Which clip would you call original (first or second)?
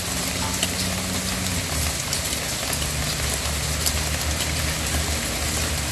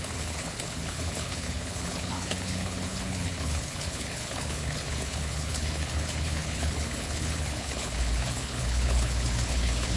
first